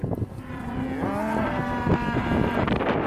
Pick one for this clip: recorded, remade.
recorded